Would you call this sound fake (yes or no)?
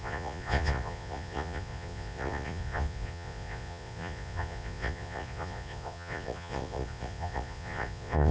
yes